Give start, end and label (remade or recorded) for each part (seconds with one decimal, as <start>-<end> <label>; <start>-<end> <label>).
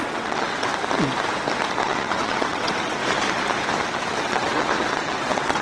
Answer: 0.0-0.7 remade; 0.7-1.8 recorded; 1.8-3.0 remade; 3.0-3.8 recorded; 3.8-5.6 remade